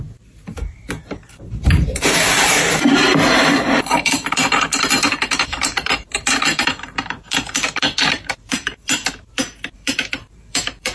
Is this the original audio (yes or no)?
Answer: no